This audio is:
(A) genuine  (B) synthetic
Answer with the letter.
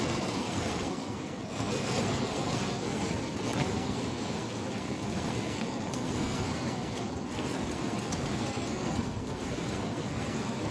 B